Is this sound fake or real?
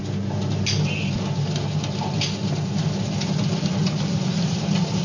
real